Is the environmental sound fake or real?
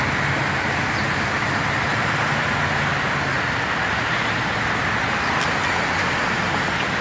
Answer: real